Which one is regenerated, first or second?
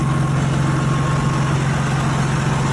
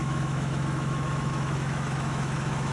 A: second